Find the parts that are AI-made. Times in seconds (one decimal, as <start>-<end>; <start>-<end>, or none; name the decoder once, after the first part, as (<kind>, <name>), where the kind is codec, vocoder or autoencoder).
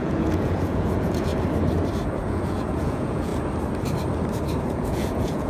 0.0-1.3 (vocoder, Vocos); 2.1-3.3; 4.6-5.5